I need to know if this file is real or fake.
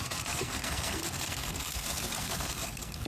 fake